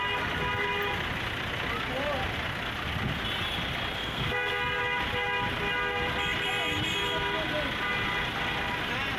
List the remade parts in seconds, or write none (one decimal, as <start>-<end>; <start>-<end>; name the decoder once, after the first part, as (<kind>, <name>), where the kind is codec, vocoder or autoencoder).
4.0-4.8 (codec, SNAC)

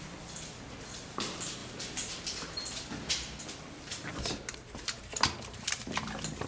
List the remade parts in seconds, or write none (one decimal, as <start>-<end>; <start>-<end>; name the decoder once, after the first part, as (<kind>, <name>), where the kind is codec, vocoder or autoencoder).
none